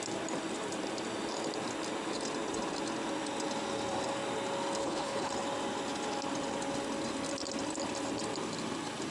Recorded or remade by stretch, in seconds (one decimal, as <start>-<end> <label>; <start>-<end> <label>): 0.0-4.8 recorded; 4.8-5.3 remade; 5.3-9.1 recorded